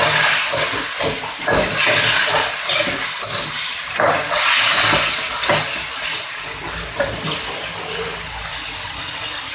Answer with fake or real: real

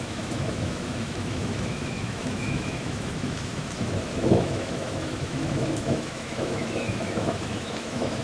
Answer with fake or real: fake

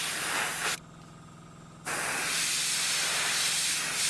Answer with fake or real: real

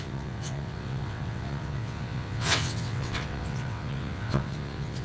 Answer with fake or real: fake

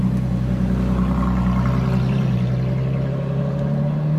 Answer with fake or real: real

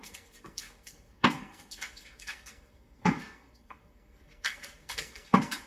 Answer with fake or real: fake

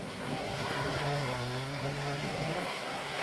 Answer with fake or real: fake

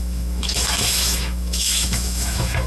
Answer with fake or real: fake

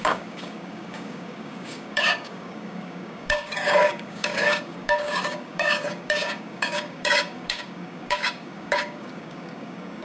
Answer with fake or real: fake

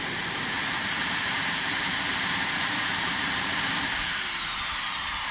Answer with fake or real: fake